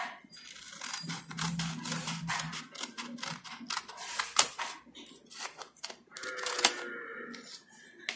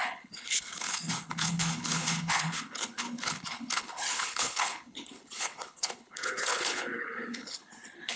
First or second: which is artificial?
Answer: second